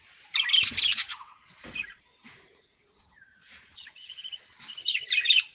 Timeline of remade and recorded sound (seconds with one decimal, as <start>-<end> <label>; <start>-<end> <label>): 0.0-0.9 recorded; 0.9-4.2 remade; 4.2-5.5 recorded